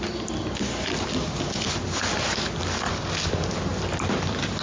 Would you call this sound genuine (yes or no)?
yes